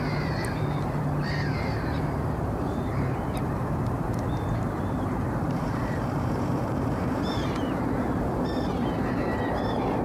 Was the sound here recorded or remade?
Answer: remade